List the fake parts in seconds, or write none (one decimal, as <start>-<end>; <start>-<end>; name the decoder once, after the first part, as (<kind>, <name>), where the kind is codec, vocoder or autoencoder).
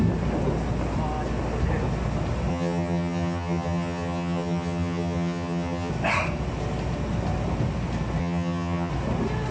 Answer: 2.5-5.9 (vocoder, HiFi-GAN); 8.2-8.9